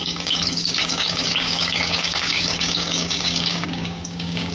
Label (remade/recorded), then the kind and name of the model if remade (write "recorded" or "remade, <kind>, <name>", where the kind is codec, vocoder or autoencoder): remade, codec, DAC